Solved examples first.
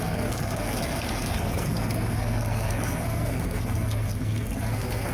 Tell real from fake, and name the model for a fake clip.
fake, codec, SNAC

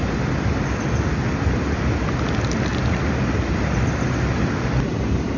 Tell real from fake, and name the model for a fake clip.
real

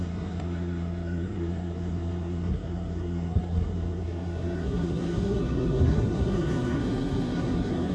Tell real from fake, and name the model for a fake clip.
fake, codec, SNAC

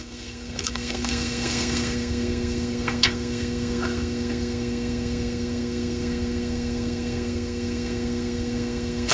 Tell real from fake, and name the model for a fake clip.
fake, codec, SNAC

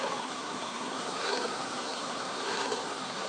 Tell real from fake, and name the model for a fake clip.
fake, codec, SNAC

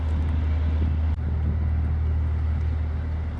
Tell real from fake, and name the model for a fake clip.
real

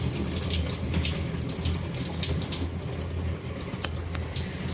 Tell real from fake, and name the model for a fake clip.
real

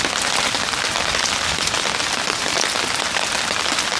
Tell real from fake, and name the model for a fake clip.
real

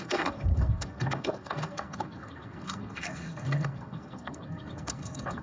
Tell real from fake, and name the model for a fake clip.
fake, codec, SNAC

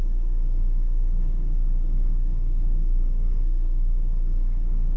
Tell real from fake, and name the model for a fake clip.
fake, codec, SNAC